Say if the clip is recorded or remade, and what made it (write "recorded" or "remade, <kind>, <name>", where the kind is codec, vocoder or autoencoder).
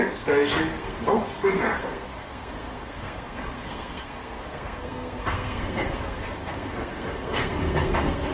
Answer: remade, codec, SNAC